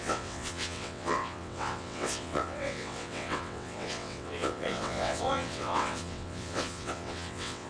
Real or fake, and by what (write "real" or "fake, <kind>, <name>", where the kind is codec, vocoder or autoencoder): fake, vocoder, WaveNeXt